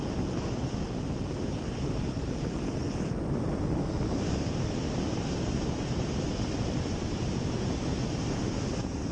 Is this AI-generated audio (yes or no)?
no